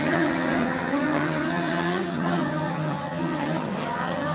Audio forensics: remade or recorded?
remade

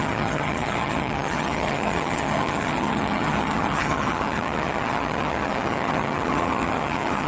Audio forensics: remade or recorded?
remade